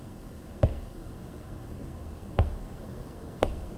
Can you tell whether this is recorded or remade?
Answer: remade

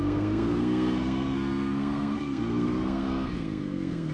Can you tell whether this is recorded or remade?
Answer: remade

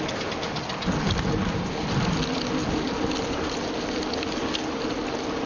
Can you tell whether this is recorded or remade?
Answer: recorded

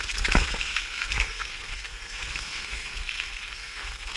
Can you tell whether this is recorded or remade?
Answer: remade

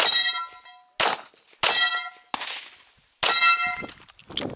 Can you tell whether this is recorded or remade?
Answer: recorded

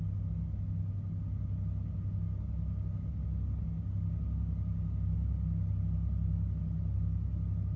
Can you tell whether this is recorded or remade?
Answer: recorded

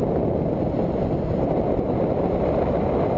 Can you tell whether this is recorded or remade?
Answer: recorded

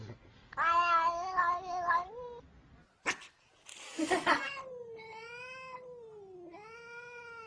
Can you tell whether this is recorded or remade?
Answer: recorded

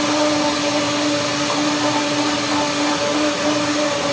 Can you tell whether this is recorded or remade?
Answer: recorded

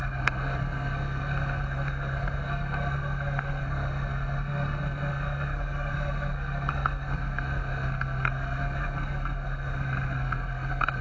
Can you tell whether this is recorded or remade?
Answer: remade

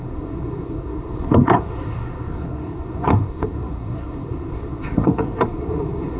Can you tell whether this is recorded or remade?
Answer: remade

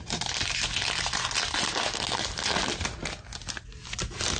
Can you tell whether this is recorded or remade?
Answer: recorded